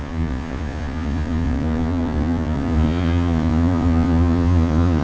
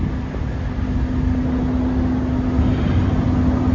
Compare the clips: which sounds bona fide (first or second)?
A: second